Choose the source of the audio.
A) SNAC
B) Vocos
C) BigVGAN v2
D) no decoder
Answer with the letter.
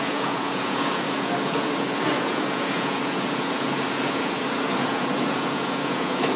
B